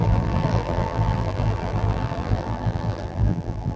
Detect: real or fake fake